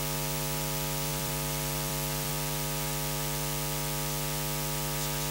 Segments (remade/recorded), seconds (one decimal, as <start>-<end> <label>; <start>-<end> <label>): 0.0-1.1 recorded; 1.1-2.3 remade; 2.3-5.3 recorded